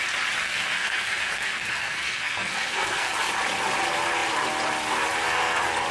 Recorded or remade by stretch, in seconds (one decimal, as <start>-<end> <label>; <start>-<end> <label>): 0.0-0.4 recorded; 0.4-3.1 remade; 3.1-5.9 recorded